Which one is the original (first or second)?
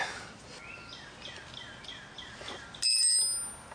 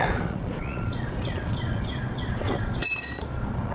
first